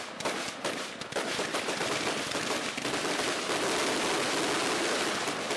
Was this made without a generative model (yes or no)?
yes